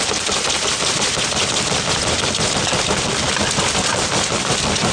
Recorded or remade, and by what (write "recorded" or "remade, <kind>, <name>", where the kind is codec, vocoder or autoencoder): recorded